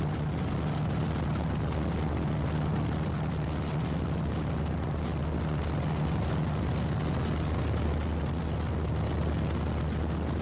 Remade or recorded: recorded